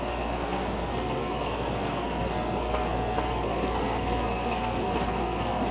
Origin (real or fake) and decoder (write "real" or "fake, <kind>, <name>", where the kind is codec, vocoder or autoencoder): fake, codec, SNAC